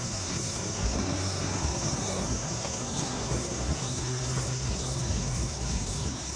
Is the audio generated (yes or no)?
yes